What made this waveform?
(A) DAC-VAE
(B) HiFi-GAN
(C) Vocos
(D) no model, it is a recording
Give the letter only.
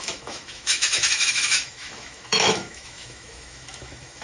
A